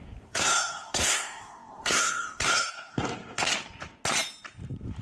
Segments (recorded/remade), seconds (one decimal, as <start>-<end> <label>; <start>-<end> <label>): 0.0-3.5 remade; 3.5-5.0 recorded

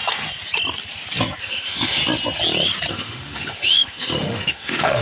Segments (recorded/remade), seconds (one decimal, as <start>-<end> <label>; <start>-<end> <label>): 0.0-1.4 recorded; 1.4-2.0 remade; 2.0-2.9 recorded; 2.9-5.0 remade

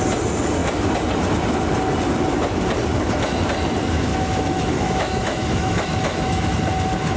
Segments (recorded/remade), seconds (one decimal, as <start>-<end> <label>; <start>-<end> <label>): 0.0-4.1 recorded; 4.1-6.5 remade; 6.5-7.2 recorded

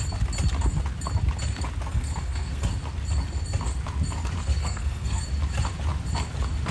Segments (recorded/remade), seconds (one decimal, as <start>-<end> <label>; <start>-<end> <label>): 0.0-1.9 recorded; 1.9-2.7 remade; 2.7-4.6 recorded; 4.6-5.3 remade; 5.3-6.7 recorded

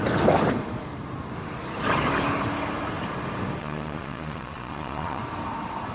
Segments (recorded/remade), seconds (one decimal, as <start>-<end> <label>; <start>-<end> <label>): 0.0-3.6 recorded; 3.6-5.2 remade; 5.2-5.9 recorded

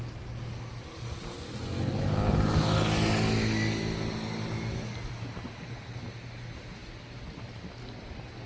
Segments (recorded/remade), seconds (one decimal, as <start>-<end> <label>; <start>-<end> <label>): 0.0-8.5 recorded

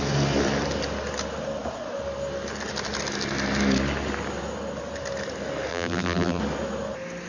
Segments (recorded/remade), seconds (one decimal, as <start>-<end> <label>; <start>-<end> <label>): 0.0-5.7 recorded; 5.7-6.4 remade; 6.4-7.3 recorded

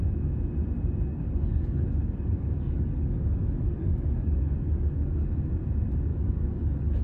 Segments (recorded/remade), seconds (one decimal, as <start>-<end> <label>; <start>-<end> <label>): 0.0-1.1 recorded; 1.1-5.3 remade; 5.3-6.1 recorded; 6.1-7.0 remade